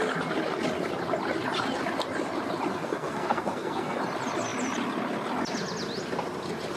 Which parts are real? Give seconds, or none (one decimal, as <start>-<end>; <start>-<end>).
0.0-2.7; 4.0-6.8